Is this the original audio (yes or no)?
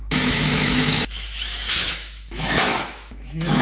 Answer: no